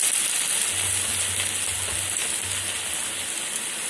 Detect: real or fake real